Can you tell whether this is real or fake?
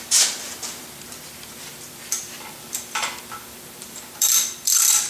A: fake